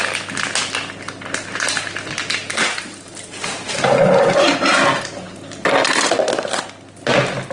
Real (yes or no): yes